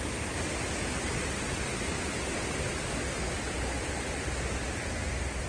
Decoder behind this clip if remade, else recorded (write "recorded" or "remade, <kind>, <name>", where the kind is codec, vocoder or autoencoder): recorded